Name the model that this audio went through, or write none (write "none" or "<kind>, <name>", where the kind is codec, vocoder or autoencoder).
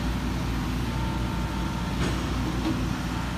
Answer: none